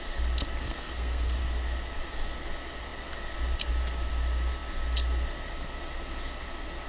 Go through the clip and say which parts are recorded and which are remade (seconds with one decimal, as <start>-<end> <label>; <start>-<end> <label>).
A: 0.0-0.6 recorded; 0.6-1.4 remade; 1.4-6.9 recorded